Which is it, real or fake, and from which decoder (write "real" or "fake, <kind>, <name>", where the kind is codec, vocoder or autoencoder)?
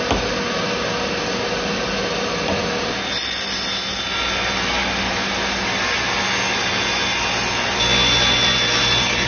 real